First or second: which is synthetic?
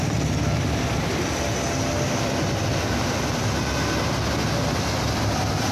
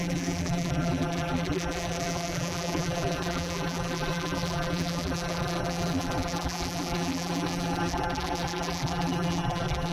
second